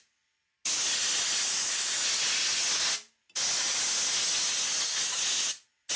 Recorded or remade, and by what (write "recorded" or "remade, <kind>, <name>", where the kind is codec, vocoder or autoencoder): recorded